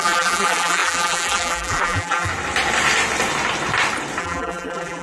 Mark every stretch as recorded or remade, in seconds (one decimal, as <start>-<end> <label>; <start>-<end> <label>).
0.0-2.3 remade; 2.3-4.2 recorded; 4.2-5.0 remade